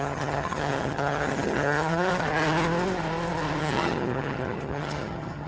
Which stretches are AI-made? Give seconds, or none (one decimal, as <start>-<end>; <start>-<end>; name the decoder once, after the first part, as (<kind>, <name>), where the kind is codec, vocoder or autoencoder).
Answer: 0.0-2.1 (vocoder, HiFi-GAN); 3.6-5.5